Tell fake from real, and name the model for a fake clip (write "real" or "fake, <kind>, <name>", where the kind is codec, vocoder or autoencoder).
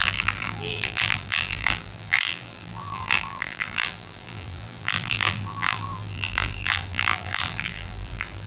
fake, vocoder, BigVGAN v2